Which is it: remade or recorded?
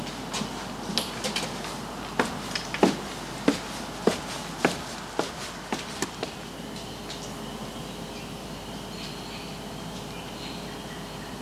recorded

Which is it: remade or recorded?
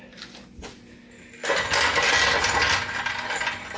recorded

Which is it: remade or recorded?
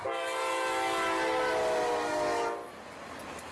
recorded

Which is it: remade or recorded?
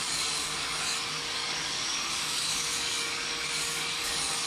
remade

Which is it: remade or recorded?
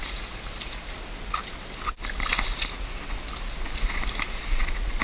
recorded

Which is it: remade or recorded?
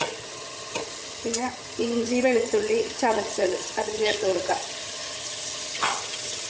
remade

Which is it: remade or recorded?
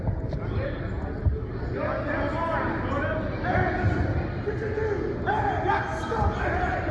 recorded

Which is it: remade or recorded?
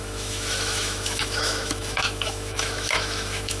remade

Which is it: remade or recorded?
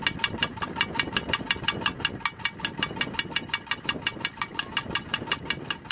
recorded